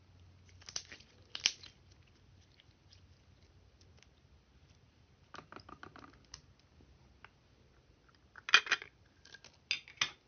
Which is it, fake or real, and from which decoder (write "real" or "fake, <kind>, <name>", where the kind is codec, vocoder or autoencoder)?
real